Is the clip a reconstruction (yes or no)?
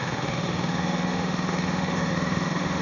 yes